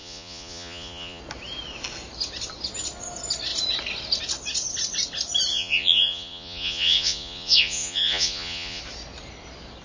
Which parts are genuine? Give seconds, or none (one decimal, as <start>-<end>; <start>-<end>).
1.2-5.5; 8.8-9.8